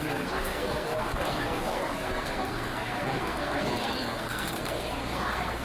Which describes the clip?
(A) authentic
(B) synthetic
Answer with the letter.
B